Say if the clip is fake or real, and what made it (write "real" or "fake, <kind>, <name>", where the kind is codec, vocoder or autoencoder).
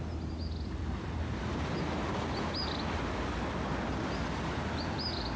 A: real